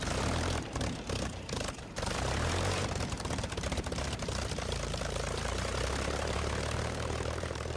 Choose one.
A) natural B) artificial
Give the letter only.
B